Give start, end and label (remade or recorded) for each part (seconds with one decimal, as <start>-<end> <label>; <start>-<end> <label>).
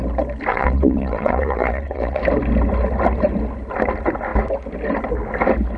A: 0.0-0.5 recorded; 0.5-2.2 remade; 2.2-5.8 recorded